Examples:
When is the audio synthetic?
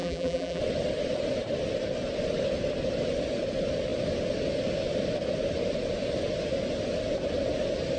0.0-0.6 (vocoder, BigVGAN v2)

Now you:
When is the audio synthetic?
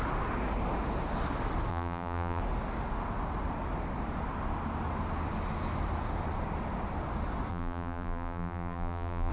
1.7-2.4 (vocoder, BigVGAN v2); 7.5-9.3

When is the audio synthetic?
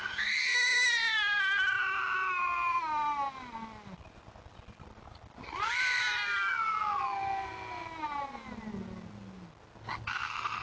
none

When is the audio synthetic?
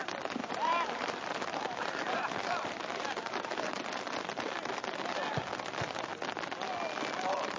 0.4-5.0 (vocoder, BigVGAN v2)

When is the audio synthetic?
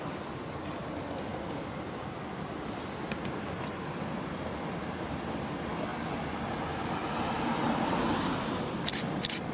none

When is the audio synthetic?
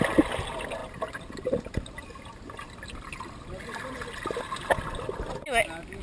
none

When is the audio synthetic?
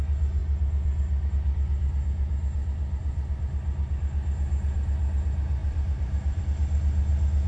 5.6-6.4 (vocoder, BigVGAN v2)